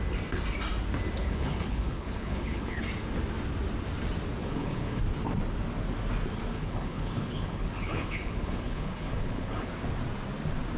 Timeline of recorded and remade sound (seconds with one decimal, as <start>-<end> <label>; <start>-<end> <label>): 0.0-1.2 recorded; 1.2-2.8 remade; 2.8-4.4 recorded; 4.4-5.0 remade; 5.0-6.5 recorded; 6.5-9.7 remade; 9.7-10.8 recorded